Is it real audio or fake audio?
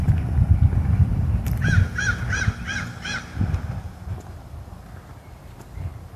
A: fake